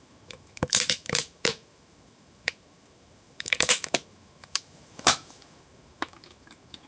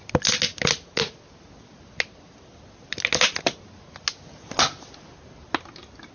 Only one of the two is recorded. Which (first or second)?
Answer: second